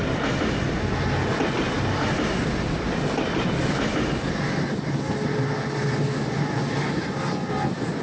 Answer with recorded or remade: recorded